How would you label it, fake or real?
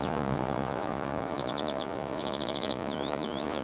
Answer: fake